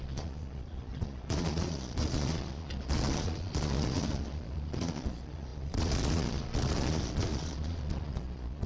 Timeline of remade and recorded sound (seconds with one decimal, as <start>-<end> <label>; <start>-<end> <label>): 0.0-8.7 remade